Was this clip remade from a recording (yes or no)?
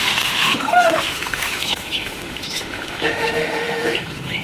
yes